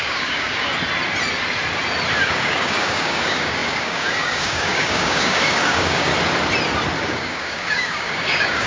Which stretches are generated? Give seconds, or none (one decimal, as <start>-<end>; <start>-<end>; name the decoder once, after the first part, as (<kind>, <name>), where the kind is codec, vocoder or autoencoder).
0.0-0.7 (codec, DAC); 2.2-6.1; 7.0-8.7